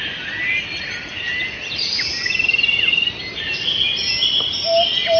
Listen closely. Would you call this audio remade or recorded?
recorded